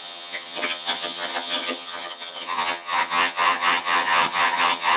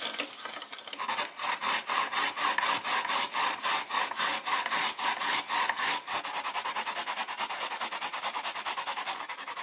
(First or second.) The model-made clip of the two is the first